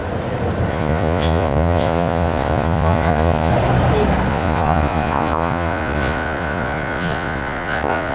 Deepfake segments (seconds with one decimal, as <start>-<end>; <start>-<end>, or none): 0.7-3.5; 4.3-8.1